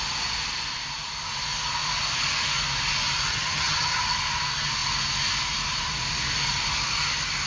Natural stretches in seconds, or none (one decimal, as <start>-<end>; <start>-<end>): 0.0-3.3; 4.0-7.5

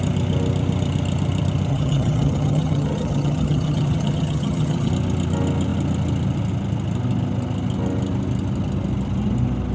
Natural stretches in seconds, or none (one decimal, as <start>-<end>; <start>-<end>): 0.0-1.7; 4.9-9.7

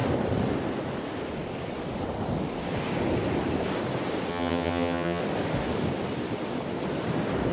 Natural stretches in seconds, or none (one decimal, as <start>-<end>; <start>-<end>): 0.0-4.3; 5.2-7.5

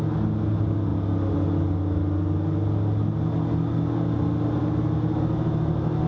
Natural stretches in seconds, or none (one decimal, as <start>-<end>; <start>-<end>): 0.0-6.1

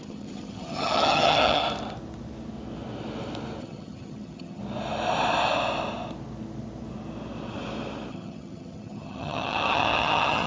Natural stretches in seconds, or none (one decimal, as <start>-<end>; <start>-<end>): 1.6-3.6; 4.6-8.1

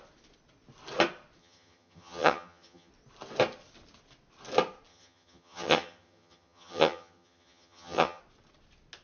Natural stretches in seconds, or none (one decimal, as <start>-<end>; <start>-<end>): 0.0-1.4; 2.9-4.9; 8.2-9.0

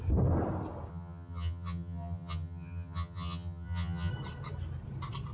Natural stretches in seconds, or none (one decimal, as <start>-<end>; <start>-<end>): 0.0-0.9; 4.1-5.3